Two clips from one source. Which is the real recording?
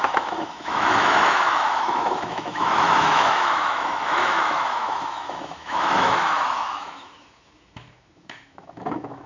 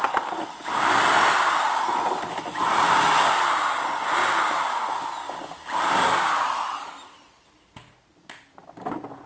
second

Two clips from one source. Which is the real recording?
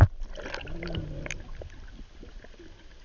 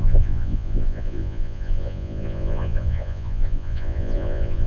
first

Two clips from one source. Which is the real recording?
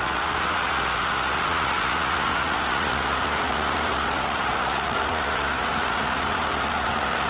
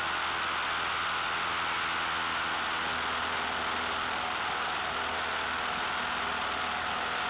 second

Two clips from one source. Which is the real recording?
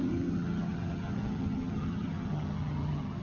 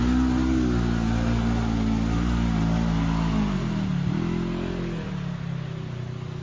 second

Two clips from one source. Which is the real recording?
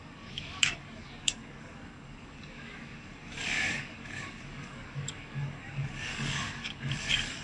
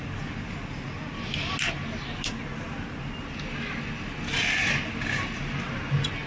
second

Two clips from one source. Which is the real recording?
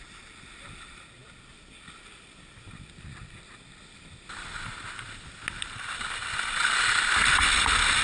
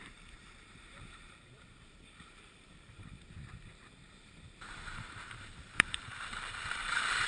first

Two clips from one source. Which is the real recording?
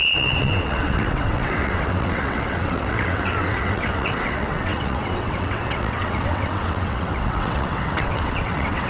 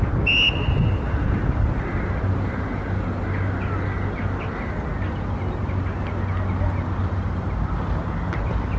second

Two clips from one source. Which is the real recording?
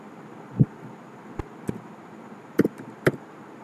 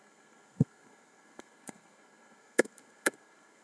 first